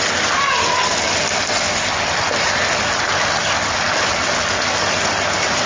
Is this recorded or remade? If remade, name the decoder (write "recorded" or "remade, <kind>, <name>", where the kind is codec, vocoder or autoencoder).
recorded